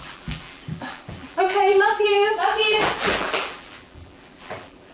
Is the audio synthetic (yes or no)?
yes